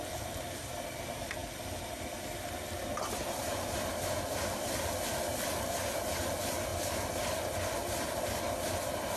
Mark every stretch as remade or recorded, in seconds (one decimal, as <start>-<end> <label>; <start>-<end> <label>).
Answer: 0.0-9.2 recorded